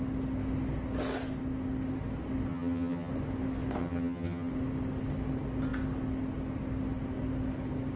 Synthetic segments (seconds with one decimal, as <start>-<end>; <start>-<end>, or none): 2.5-3.1; 3.8-4.5